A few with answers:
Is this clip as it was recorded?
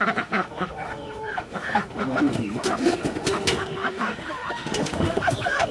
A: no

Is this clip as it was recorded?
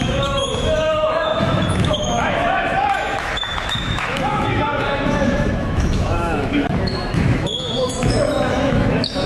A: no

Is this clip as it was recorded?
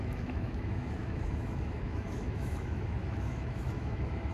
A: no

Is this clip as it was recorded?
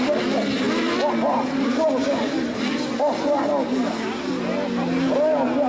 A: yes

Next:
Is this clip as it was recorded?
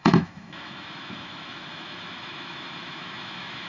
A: no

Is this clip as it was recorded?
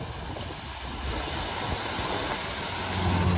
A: yes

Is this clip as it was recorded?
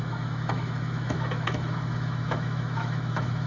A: no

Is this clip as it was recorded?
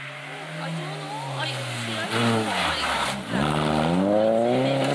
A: yes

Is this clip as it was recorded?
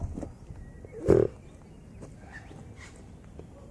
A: yes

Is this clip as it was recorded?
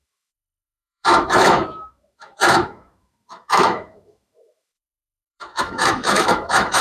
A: no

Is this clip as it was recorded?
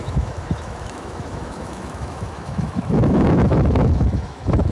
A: no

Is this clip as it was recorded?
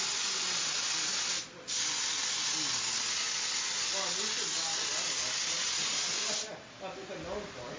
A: yes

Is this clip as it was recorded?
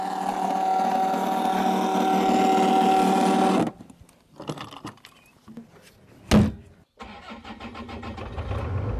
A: yes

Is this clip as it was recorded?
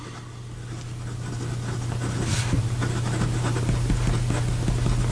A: yes